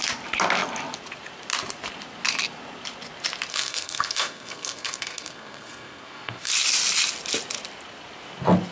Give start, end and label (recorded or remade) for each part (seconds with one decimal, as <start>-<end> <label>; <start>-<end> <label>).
0.0-3.5 recorded; 3.5-6.5 remade; 6.5-8.7 recorded